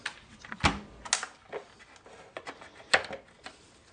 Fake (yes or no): no